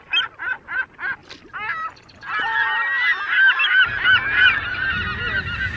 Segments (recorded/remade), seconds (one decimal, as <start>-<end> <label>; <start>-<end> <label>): 0.0-5.8 recorded